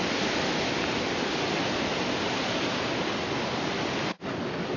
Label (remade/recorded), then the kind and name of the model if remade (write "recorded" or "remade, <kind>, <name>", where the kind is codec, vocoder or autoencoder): recorded